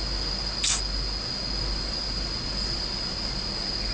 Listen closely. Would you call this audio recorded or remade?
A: recorded